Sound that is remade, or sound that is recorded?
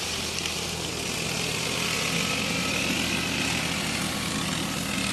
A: recorded